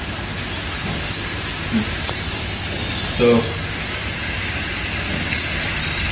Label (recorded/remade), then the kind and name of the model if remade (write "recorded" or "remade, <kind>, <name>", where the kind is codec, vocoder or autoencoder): recorded